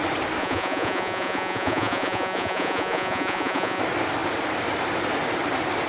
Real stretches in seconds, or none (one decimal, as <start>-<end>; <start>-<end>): 0.0-0.4; 3.8-5.9

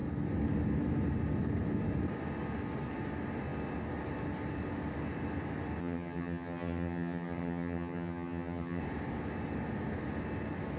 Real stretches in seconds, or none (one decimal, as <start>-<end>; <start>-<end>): 0.0-5.8; 8.8-10.8

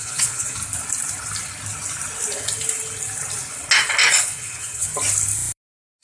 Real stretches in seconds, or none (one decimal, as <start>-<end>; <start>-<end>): 0.6-4.2; 4.9-6.0